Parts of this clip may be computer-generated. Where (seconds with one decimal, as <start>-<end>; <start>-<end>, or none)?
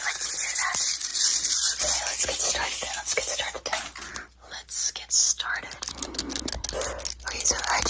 none